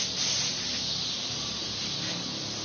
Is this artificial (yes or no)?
no